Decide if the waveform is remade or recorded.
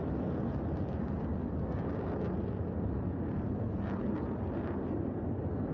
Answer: recorded